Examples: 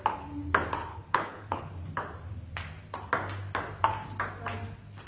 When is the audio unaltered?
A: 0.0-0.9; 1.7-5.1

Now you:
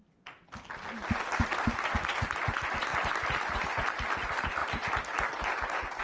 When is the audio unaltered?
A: 0.0-6.0

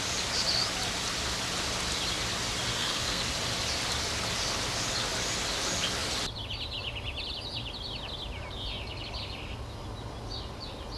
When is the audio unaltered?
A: 0.0-2.7; 3.2-11.0

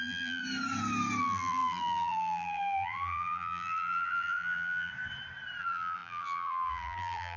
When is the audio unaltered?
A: 0.4-1.2; 4.9-5.6

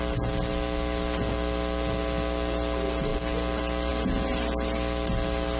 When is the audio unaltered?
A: 0.0-5.6